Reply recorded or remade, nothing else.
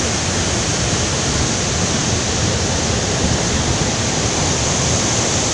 recorded